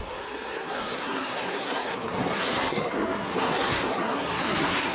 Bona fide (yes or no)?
no